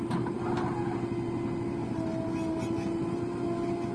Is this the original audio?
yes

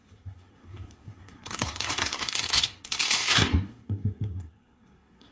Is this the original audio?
no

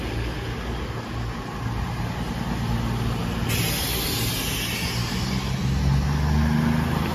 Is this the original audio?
yes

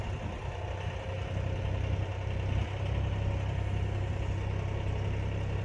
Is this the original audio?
yes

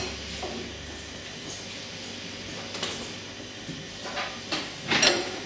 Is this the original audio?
yes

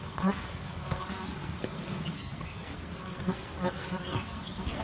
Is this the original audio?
no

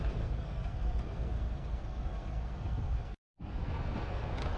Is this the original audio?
no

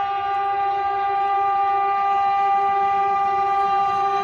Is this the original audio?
yes